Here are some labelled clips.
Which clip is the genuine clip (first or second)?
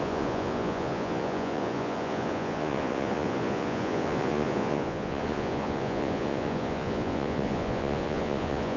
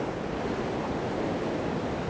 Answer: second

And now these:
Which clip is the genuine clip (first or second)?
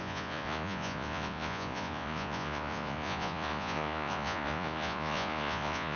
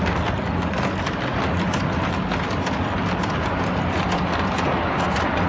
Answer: second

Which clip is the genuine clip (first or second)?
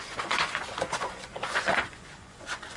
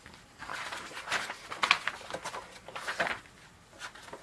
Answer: second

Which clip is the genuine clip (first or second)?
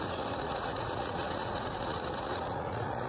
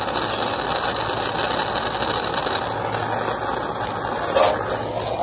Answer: second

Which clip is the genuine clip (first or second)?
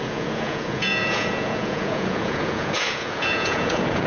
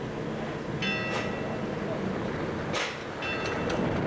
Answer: second